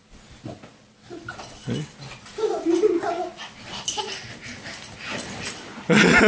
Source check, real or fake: real